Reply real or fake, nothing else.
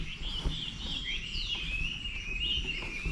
real